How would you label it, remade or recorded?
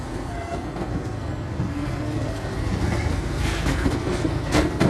remade